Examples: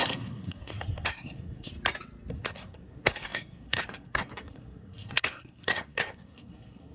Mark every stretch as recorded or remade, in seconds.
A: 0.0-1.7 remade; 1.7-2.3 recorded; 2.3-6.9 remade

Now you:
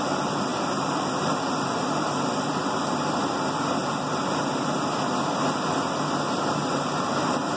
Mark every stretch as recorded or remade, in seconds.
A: 0.0-0.5 recorded; 0.5-3.2 remade; 3.2-7.6 recorded

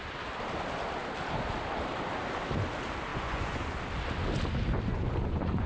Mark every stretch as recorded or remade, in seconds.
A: 0.0-3.1 recorded; 3.1-3.8 remade; 3.8-4.9 recorded; 4.9-5.7 remade

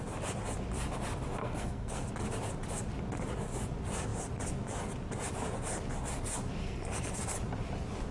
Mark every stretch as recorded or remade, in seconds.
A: 0.0-1.4 recorded; 1.4-2.1 remade; 2.1-6.6 recorded; 6.6-7.2 remade; 7.2-8.1 recorded

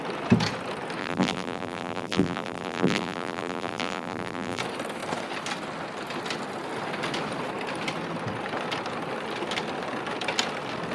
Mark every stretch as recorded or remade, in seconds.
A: 0.0-1.0 recorded; 1.0-4.6 remade; 4.6-10.9 recorded

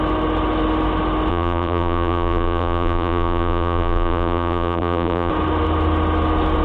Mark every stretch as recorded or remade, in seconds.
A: 0.0-1.3 recorded; 1.3-5.3 remade; 5.3-6.6 recorded

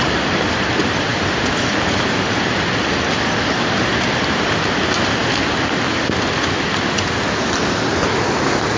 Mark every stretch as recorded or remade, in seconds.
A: 0.0-8.8 recorded

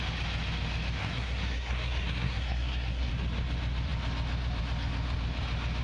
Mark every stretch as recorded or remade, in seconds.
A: 0.0-1.0 recorded; 1.0-3.1 remade; 3.1-5.8 recorded